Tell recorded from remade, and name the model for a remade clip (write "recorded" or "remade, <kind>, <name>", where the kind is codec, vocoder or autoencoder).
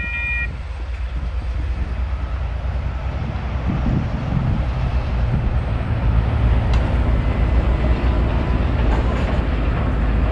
recorded